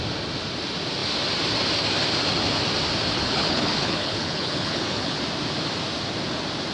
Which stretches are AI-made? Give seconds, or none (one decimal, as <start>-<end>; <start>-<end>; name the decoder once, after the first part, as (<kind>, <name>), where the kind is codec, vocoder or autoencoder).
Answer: 3.1-5.2 (codec, HILCodec)